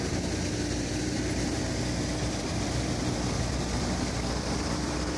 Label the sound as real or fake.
fake